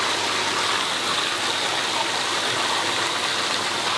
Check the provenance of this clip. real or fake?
real